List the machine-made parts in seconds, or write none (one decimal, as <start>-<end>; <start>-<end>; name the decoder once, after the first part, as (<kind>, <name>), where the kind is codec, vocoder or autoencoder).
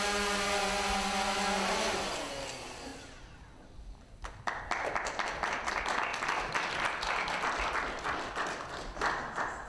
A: none